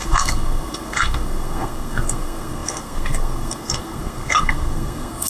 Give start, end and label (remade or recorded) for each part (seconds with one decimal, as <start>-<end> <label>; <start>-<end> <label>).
0.0-5.3 remade